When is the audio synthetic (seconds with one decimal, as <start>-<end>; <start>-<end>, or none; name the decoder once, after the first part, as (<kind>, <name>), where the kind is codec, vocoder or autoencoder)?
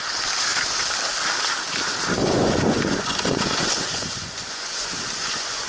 2.2-5.7 (vocoder, Vocos)